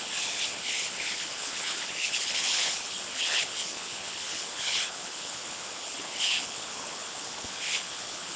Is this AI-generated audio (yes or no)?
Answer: yes